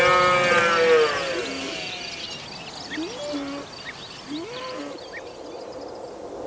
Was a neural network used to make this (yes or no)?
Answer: no